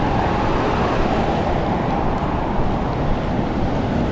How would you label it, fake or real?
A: real